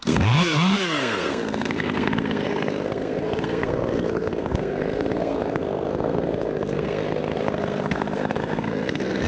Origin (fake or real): fake